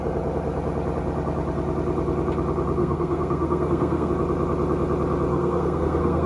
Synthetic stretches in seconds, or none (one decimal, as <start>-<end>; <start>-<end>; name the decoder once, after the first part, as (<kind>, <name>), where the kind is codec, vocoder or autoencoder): 2.8-4.1 (codec, SNAC); 5.3-6.3